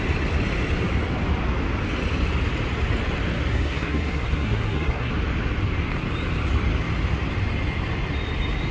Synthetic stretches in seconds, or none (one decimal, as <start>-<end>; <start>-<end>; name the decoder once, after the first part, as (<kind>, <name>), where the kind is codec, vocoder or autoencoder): 3.5-5.1 (codec, SNAC)